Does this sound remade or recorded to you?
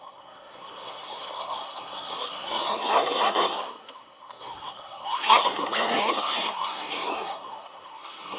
remade